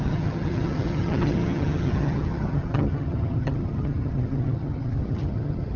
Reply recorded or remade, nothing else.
remade